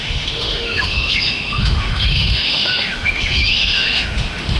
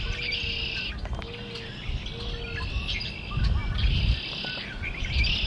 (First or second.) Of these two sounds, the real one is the second